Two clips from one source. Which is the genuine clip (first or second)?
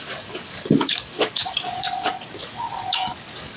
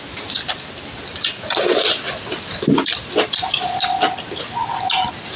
second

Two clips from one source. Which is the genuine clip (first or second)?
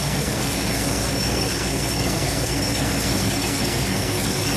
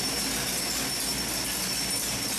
second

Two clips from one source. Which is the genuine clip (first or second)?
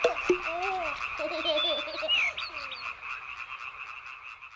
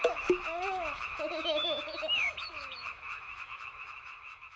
first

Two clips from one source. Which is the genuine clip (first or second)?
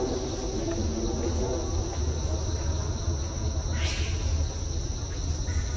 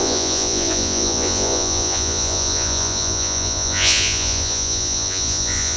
first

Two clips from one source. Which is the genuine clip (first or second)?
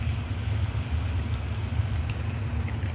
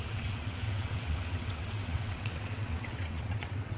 first